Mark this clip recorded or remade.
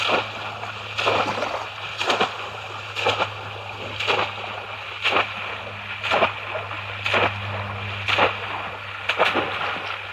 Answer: recorded